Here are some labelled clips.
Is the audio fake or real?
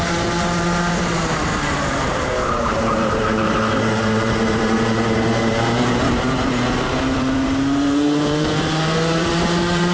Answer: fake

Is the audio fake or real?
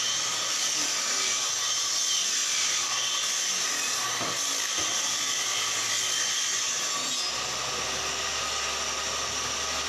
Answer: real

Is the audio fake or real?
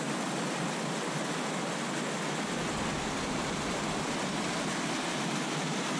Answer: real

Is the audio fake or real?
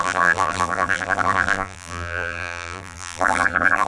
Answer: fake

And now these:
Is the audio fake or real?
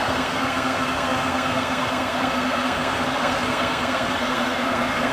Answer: fake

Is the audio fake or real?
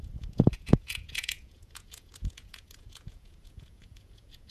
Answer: fake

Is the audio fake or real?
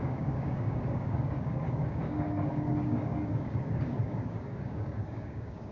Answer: fake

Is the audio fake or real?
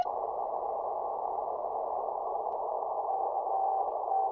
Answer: real